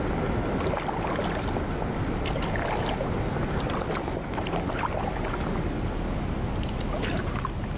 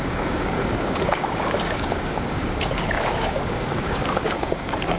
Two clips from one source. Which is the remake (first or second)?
second